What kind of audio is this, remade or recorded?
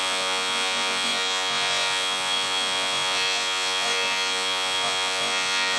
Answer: remade